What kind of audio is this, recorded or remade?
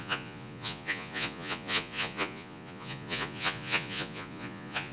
remade